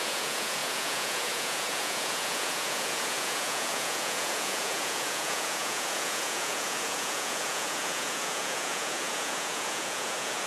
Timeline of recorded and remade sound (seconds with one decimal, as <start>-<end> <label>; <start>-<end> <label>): 0.0-10.5 remade